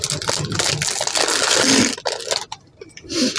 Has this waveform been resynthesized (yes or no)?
no